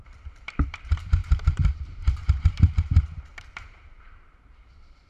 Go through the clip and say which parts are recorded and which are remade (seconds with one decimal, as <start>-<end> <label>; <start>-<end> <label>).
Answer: 0.0-5.1 remade